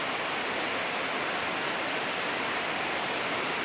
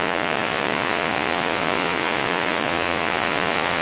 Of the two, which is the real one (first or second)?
first